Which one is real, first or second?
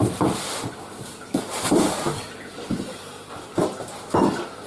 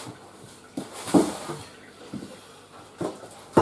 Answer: second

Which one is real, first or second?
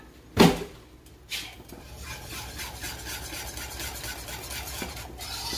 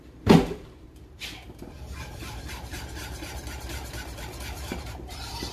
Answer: first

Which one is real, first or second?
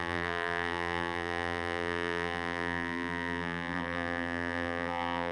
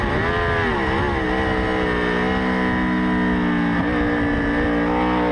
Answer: second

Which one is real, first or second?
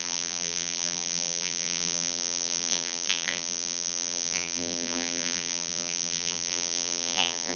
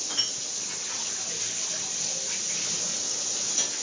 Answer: second